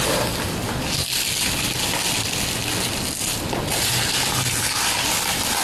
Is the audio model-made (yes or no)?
no